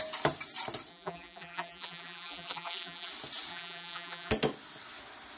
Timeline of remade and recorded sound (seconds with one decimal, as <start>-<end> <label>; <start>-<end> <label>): 0.0-0.9 recorded; 0.9-3.1 remade; 3.1-3.5 recorded; 3.5-4.3 remade; 4.3-5.4 recorded